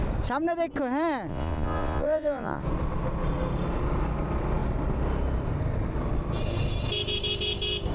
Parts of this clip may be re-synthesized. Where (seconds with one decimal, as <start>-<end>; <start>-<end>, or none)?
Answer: 1.3-2.6